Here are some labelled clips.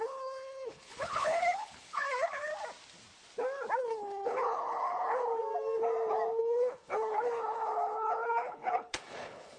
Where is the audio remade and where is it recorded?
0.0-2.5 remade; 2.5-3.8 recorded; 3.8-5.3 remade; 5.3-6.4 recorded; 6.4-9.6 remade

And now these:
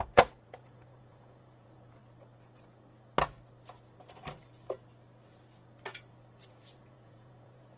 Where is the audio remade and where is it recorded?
0.0-2.0 remade; 2.0-6.5 recorded; 6.5-7.8 remade